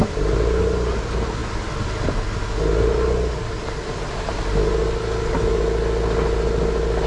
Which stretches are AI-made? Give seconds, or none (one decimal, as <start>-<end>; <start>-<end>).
none